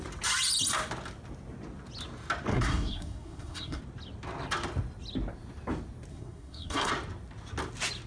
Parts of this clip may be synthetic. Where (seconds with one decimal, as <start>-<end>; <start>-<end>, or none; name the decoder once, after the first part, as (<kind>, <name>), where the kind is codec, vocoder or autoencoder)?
2.5-3.8 (codec, SNAC); 6.1-6.9